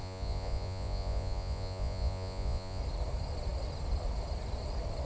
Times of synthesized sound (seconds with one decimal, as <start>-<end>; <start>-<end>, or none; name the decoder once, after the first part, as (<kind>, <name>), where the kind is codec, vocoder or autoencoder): 0.0-2.8 (vocoder, Vocos)